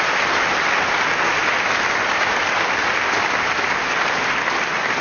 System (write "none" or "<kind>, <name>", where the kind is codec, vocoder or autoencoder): none